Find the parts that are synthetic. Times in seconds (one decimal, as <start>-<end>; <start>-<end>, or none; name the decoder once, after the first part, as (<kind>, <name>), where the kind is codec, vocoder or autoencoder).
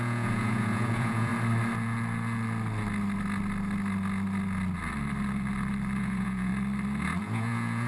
0.0-1.3 (vocoder, Vocos); 6.0-6.5; 7.2-7.9